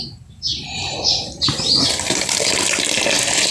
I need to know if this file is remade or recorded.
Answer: recorded